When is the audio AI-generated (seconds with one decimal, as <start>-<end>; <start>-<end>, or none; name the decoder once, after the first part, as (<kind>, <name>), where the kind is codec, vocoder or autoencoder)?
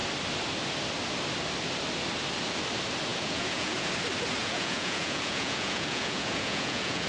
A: 3.1-3.9 (vocoder, Vocos); 4.4-7.1